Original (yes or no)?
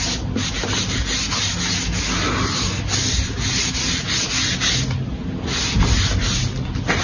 yes